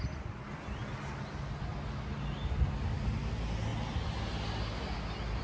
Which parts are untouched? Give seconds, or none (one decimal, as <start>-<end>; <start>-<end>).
0.0-5.4